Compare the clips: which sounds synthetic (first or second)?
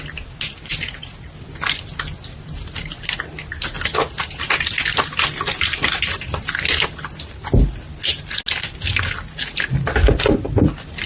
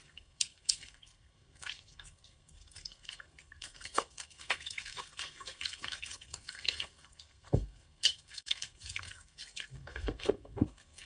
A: second